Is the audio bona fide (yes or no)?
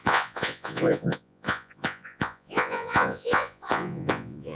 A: no